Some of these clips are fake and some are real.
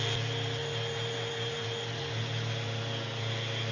real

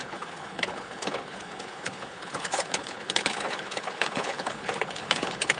fake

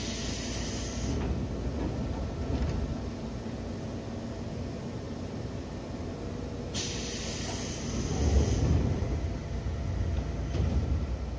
real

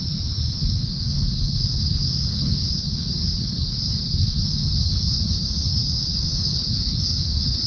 fake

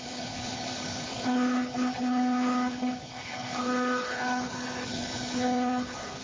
fake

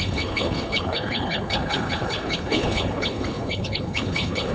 fake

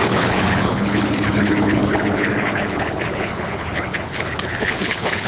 fake